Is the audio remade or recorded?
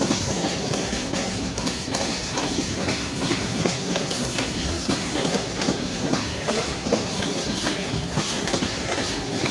remade